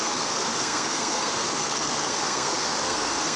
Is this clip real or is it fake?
fake